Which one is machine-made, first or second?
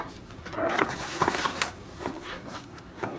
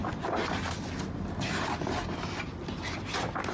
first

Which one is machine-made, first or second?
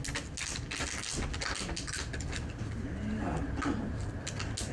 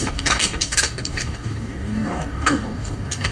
second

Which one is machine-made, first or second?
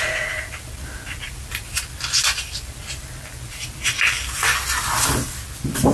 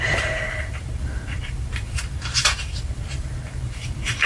second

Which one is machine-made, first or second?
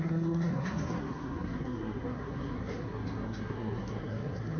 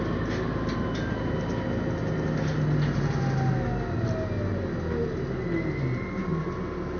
first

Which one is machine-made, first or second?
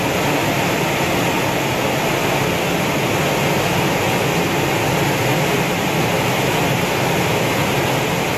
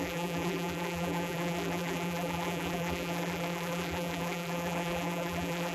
second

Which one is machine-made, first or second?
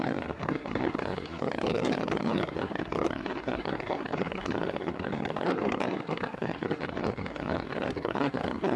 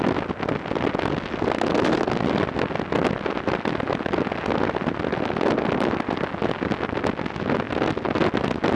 first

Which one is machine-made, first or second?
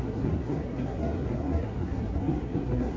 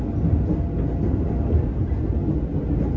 first